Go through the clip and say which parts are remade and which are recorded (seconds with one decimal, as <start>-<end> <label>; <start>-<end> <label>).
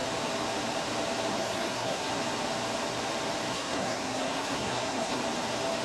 0.0-1.3 recorded; 1.3-2.1 remade; 2.1-3.5 recorded; 3.5-5.2 remade; 5.2-5.8 recorded